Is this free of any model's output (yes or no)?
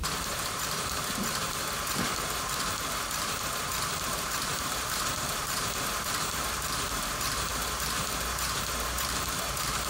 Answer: no